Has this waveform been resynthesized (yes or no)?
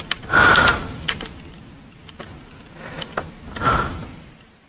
no